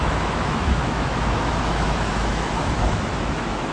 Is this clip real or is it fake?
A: fake